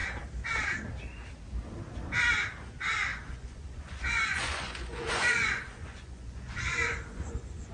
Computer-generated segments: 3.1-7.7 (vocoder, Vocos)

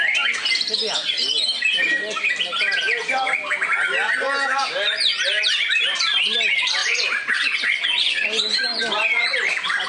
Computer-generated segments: 6.8-8.8 (vocoder, Vocos)